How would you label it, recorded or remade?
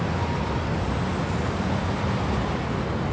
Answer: recorded